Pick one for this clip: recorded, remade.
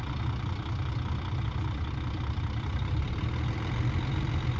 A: recorded